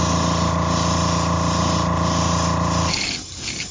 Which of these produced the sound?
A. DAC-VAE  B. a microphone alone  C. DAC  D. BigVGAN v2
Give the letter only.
B